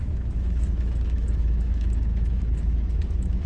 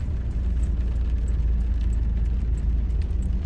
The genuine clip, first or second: second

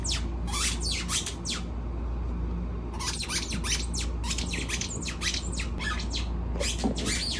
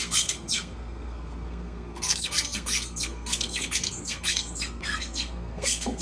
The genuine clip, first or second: first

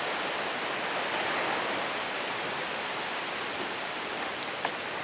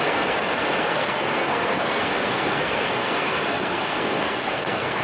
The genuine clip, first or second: first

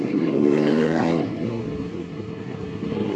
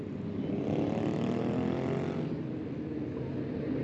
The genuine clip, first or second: second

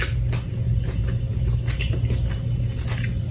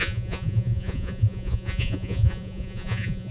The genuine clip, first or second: first